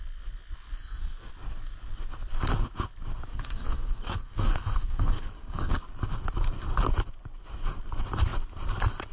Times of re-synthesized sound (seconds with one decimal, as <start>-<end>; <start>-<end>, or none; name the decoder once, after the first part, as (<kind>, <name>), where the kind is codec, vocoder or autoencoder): 0.8-1.3 (codec, SNAC); 3.3-5.8